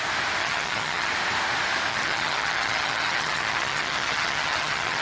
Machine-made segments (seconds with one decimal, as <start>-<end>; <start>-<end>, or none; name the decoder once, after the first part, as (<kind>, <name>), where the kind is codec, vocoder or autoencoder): 0.4-1.1 (vocoder, HiFi-GAN); 1.9-5.0